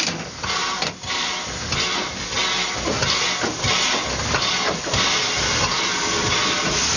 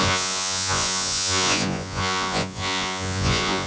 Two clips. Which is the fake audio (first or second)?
second